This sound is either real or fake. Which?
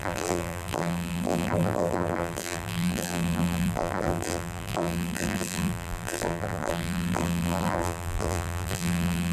fake